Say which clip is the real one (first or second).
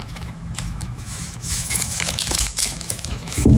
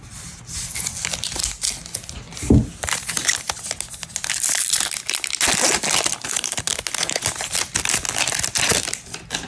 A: second